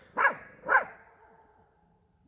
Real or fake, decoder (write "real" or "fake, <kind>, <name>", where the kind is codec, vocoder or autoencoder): real